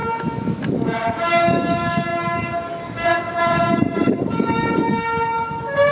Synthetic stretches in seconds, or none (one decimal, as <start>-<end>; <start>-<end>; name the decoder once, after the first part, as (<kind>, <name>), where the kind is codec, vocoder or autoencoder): 0.7-5.9 (codec, DAC)